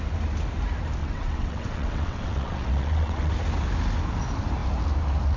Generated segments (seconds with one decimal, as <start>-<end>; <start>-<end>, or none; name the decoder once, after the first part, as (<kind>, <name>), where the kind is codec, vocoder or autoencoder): 1.0-3.3 (vocoder, WaveNeXt)